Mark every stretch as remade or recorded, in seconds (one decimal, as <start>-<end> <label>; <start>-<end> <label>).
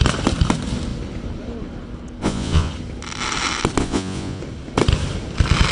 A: 0.0-2.2 recorded; 2.2-2.7 remade; 2.7-3.8 recorded; 3.8-4.4 remade; 4.4-5.7 recorded